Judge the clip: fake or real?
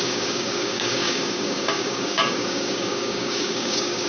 fake